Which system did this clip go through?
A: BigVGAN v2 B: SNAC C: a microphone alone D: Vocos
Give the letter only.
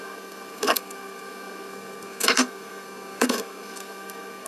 B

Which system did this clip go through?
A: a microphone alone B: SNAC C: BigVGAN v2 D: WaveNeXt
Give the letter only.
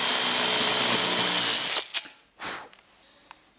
A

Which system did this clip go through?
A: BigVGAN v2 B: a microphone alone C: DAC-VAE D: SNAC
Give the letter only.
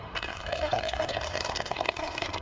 D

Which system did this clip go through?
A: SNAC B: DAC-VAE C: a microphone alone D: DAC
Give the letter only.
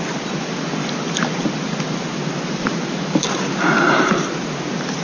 C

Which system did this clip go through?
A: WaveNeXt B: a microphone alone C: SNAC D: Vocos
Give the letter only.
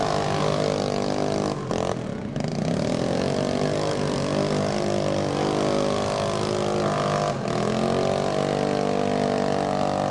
B